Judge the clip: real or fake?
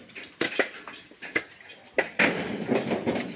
real